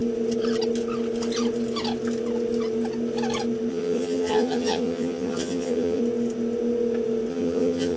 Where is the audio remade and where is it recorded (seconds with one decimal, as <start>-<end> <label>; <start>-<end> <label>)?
0.0-3.7 recorded; 3.7-6.0 remade; 6.0-7.3 recorded; 7.3-8.0 remade